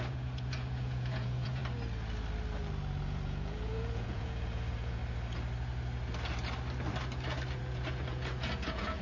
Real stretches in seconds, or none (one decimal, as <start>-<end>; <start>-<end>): 1.6-3.0; 5.0-7.6